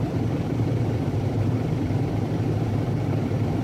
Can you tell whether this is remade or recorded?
remade